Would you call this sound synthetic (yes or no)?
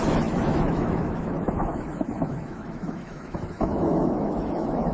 yes